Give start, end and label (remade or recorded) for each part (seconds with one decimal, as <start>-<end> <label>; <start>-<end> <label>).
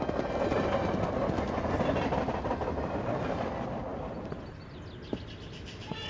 0.0-6.1 recorded